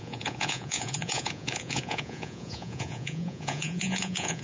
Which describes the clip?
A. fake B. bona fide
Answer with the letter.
A